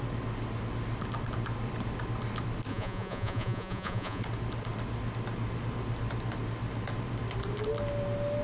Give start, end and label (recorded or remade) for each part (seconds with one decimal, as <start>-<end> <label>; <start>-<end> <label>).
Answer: 0.0-2.7 recorded; 2.7-4.2 remade; 4.2-8.4 recorded

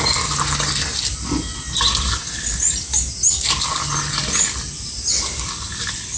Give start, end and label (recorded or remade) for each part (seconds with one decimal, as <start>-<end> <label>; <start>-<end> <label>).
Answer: 0.0-6.2 recorded

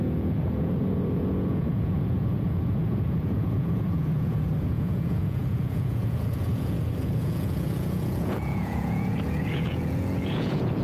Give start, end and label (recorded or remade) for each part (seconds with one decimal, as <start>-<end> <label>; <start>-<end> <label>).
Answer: 0.0-10.8 remade

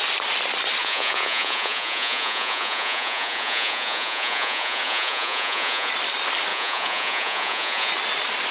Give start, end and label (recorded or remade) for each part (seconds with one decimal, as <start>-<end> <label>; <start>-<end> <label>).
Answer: 0.0-0.8 recorded; 0.8-5.9 remade; 5.9-6.5 recorded; 6.5-7.9 remade; 7.9-8.5 recorded